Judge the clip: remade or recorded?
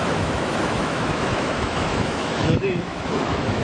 remade